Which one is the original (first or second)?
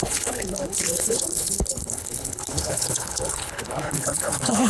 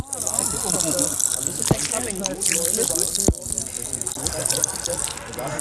second